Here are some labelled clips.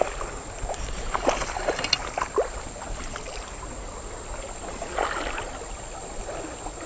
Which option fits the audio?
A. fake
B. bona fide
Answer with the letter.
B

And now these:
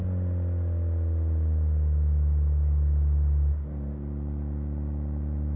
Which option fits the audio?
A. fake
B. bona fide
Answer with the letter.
B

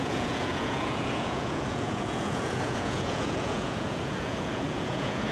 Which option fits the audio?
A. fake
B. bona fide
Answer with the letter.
A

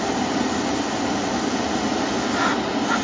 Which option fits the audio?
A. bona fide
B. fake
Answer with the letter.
A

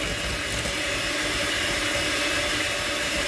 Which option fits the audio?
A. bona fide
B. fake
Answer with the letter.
A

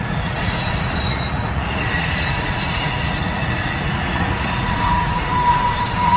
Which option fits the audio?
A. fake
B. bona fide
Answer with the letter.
A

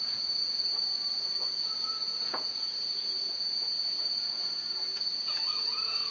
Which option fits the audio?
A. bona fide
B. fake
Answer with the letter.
B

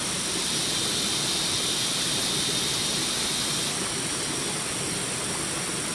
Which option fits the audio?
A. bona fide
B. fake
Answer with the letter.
A